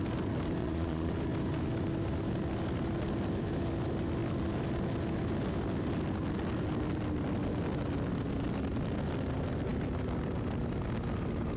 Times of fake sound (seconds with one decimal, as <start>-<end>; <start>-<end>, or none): 0.6-1.1

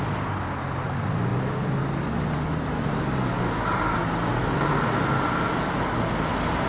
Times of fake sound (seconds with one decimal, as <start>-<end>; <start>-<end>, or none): none